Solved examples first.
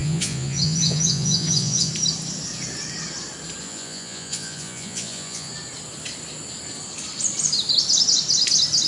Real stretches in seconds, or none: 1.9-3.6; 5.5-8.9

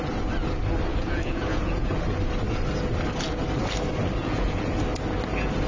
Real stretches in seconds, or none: 0.0-0.9; 1.9-4.2; 4.8-5.7

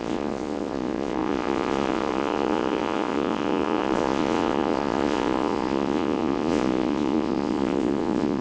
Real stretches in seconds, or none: none

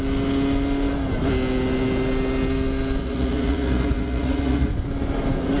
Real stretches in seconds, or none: 0.0-3.0; 4.7-5.6

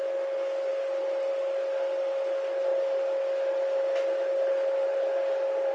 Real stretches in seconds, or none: 0.0-5.7

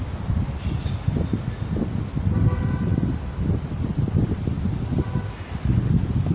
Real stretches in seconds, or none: 0.0-6.3

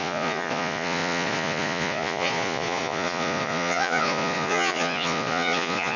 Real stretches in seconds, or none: none

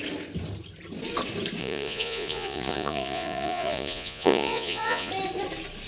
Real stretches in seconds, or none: 0.0-1.6; 5.1-5.9